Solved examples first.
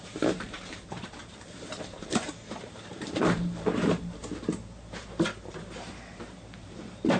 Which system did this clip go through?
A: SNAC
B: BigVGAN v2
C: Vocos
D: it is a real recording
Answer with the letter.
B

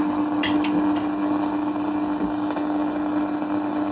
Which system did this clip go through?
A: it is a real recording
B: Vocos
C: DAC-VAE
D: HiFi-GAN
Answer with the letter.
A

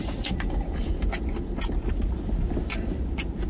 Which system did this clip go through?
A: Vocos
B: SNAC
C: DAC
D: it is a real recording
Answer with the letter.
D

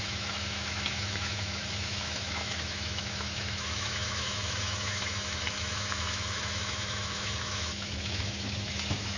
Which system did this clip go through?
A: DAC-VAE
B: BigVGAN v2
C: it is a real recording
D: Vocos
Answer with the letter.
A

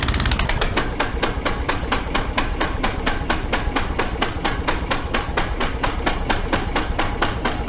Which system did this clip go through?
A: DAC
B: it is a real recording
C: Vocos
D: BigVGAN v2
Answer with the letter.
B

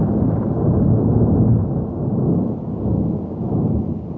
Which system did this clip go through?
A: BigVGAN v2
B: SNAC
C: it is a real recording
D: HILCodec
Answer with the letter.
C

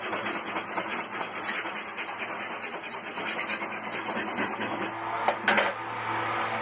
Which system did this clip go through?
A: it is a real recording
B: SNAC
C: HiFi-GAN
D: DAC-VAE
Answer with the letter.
A